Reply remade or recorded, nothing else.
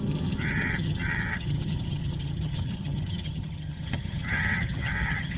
remade